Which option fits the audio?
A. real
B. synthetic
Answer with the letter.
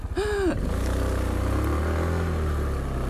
A